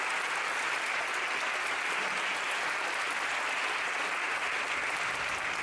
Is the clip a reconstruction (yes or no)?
no